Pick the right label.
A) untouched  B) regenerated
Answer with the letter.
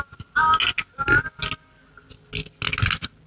A